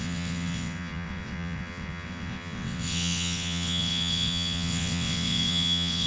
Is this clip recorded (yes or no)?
no